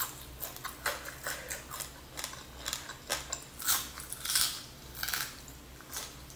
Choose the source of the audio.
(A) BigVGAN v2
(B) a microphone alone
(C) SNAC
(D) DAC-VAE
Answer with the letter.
B